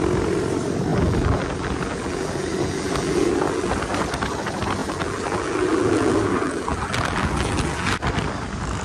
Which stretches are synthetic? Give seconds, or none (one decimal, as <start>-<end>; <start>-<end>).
0.9-3.7; 4.8-7.9